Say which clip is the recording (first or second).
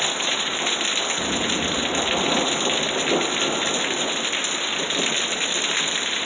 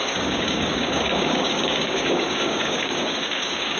first